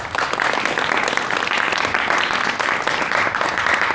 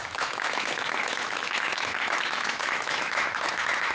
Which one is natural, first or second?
first